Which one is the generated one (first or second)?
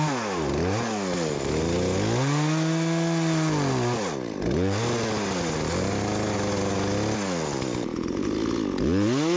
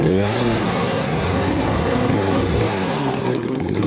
second